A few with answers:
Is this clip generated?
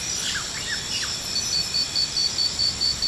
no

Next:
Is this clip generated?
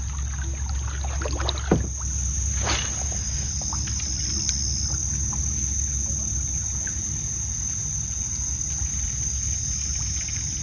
no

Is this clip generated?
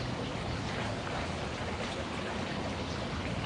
yes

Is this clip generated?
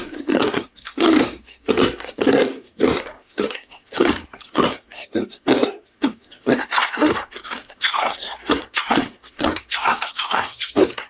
yes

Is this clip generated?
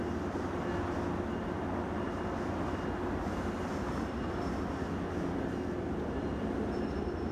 no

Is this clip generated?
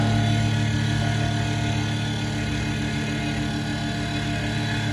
no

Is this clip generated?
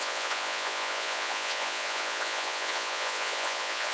yes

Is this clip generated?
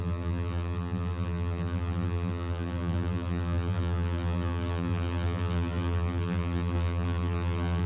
yes